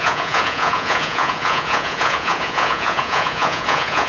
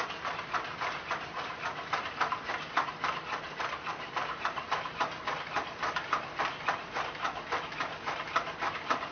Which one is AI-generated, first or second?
first